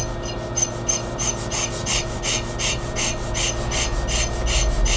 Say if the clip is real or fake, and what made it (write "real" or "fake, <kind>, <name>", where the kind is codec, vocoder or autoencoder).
real